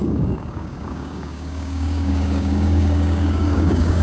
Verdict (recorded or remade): remade